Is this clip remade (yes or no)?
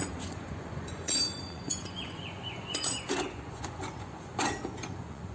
yes